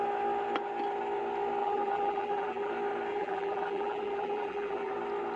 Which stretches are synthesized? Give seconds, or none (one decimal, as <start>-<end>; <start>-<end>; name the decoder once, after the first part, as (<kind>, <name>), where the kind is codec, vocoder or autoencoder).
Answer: 1.6-2.7 (vocoder, BigVGAN v2); 3.1-4.9